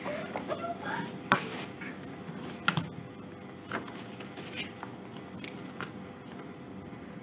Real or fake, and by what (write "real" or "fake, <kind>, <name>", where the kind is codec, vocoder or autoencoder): real